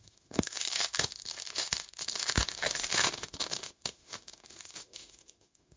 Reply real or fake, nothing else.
fake